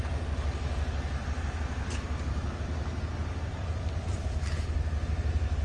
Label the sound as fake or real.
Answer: real